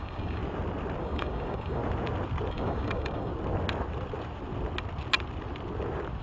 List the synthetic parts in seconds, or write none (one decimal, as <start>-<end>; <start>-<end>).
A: 0.0-0.4; 1.0-1.8; 2.5-3.3